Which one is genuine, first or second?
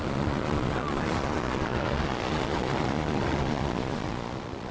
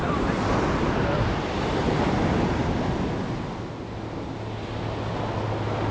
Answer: second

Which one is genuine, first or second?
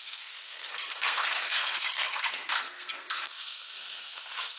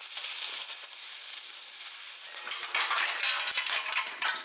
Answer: second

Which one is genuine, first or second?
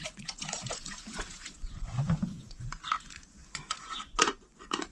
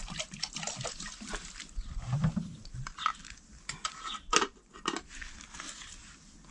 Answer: second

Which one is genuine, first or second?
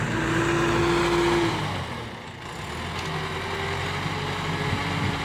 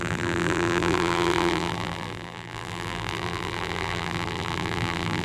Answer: first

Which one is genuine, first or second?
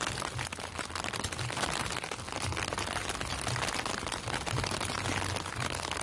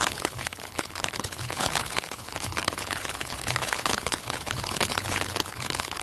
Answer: first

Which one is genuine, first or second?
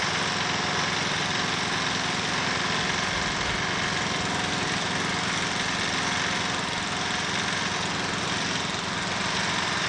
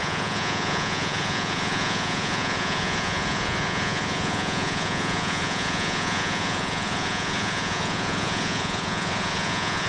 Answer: first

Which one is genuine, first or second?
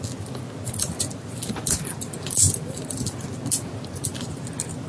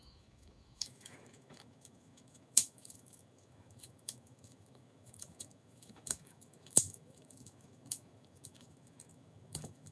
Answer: first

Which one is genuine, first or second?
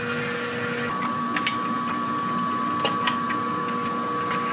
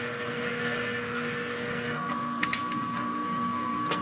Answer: first